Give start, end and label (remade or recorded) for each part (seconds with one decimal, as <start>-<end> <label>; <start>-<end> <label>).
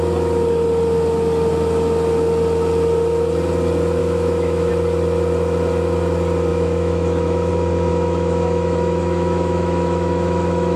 0.0-4.0 recorded; 4.0-4.7 remade; 4.7-6.5 recorded; 6.5-7.5 remade; 7.5-7.9 recorded; 7.9-10.8 remade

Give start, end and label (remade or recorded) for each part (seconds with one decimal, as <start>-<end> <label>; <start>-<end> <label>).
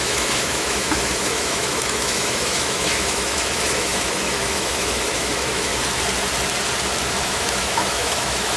0.0-5.7 remade; 5.7-7.2 recorded; 7.2-8.6 remade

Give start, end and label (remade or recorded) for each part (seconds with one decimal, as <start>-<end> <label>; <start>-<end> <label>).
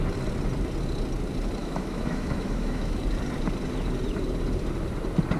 0.0-1.6 recorded; 1.6-3.0 remade; 3.0-5.4 recorded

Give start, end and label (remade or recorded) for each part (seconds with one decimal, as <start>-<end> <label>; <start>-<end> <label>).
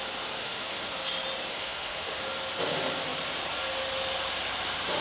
0.0-0.4 recorded; 0.4-0.9 remade; 0.9-1.5 recorded; 1.5-2.2 remade; 2.2-5.0 recorded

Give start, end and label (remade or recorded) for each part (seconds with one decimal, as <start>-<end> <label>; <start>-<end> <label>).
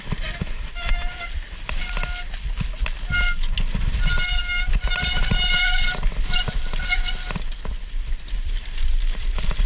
0.0-9.7 recorded